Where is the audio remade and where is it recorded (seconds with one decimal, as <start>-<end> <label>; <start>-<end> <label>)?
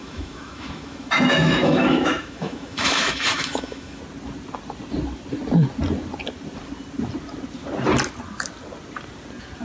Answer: 0.0-4.0 remade; 4.0-9.6 recorded